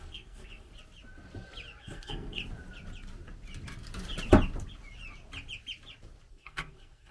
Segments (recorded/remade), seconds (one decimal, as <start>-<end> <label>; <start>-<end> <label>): 0.0-0.7 remade; 0.7-1.8 recorded; 1.8-2.4 remade; 2.4-6.3 recorded; 6.3-7.1 remade